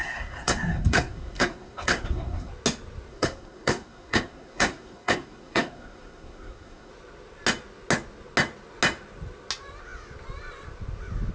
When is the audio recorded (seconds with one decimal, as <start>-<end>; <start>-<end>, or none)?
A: 2.5-3.1; 6.9-11.3